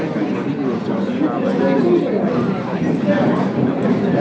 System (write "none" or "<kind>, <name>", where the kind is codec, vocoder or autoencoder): none